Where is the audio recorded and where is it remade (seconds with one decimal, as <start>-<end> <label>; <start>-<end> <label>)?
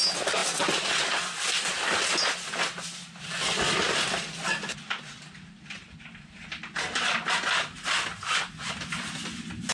0.0-9.7 recorded